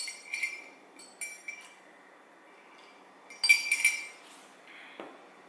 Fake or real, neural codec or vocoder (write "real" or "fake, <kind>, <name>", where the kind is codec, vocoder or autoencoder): real